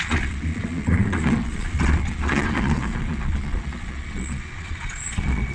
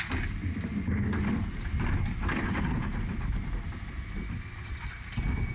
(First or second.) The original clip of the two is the second